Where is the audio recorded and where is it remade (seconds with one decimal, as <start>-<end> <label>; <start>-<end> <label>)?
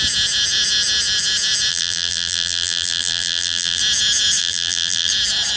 0.0-1.7 recorded; 1.7-3.8 remade; 3.8-4.4 recorded; 4.4-5.1 remade; 5.1-5.6 recorded